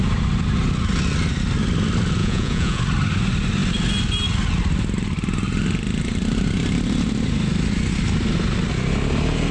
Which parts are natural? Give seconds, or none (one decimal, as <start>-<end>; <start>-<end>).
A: 0.0-2.2; 2.8-9.5